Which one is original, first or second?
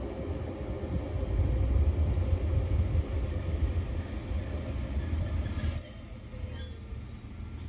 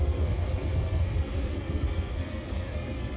first